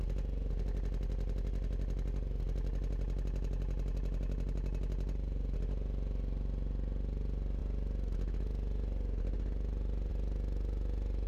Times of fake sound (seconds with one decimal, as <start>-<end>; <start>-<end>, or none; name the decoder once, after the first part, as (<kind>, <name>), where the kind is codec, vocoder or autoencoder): none